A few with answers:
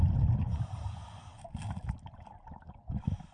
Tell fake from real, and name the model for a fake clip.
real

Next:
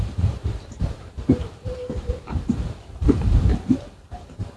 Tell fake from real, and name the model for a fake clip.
fake, vocoder, BigVGAN v2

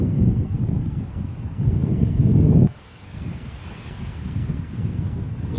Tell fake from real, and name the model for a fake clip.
fake, codec, SNAC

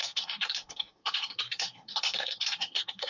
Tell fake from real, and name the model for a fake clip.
fake, codec, SNAC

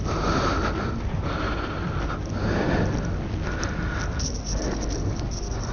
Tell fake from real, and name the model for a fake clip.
real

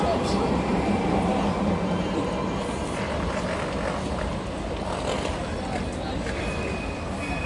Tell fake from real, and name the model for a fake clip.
real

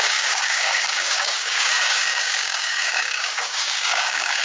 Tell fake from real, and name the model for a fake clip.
fake, codec, DAC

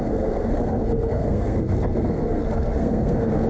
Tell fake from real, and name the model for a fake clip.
fake, codec, SNAC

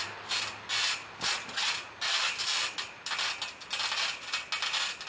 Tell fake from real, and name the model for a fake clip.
real